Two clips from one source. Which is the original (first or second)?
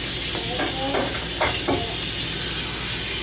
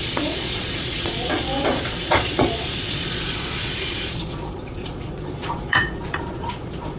first